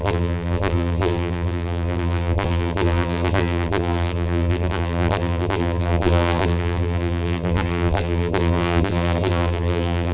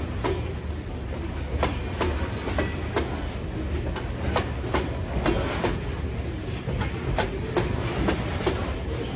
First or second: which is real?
second